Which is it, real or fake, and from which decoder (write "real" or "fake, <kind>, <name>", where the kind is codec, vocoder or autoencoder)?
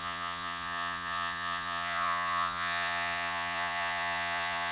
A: fake, vocoder, Vocos